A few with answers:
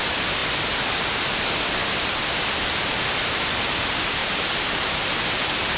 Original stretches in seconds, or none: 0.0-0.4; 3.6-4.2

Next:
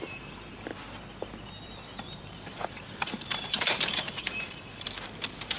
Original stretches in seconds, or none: 0.7-2.2

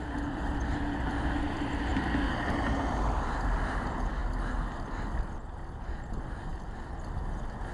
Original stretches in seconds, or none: 1.9-2.9

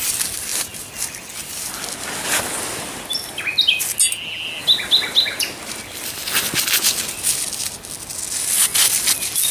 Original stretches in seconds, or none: 0.0-0.5; 1.1-9.5

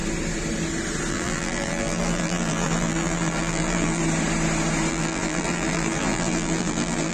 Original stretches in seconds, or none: 0.0-1.1; 4.0-4.9

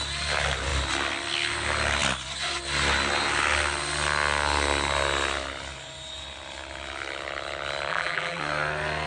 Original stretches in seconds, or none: 0.0-7.9; 8.4-9.1

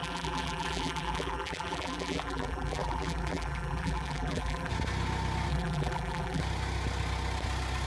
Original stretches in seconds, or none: 4.7-5.5; 6.4-7.9

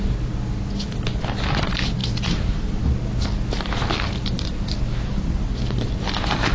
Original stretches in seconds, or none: 0.0-2.0; 2.8-6.5